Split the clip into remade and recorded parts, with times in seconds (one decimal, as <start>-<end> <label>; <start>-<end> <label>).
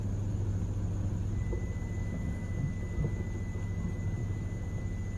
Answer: 0.0-2.0 recorded; 2.0-2.7 remade; 2.7-4.2 recorded; 4.2-4.8 remade; 4.8-5.2 recorded